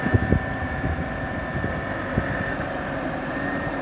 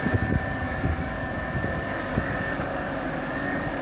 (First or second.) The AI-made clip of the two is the second